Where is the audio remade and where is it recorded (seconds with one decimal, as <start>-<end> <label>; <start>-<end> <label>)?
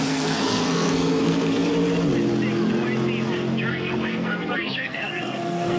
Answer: 0.0-1.7 remade; 1.7-3.7 recorded; 3.7-5.8 remade